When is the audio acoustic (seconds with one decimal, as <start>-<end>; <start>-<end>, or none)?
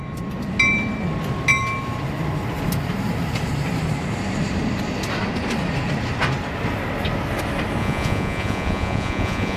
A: 0.0-7.8